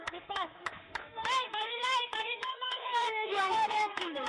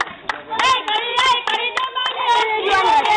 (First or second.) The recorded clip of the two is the second